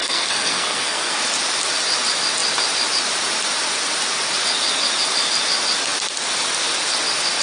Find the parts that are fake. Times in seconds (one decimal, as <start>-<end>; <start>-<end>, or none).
0.0-1.2

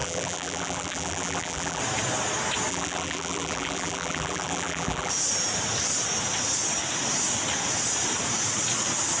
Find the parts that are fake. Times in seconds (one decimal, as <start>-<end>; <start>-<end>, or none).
0.0-1.8; 2.7-5.1

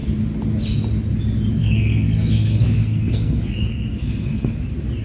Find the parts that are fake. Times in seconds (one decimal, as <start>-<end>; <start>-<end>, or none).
1.6-4.5

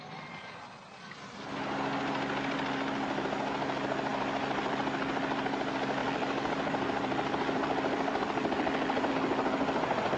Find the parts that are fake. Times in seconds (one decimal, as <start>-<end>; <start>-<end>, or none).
4.1-4.8; 6.0-9.1

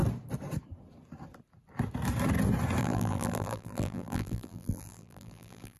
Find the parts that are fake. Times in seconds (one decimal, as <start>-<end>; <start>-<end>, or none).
2.8-5.8

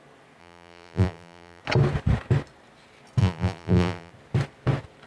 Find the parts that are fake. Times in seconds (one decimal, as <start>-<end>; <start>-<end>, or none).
0.4-1.6; 3.2-4.1

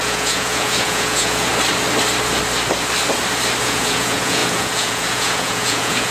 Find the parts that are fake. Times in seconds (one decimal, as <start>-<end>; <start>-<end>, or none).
0.0-1.5; 3.6-6.1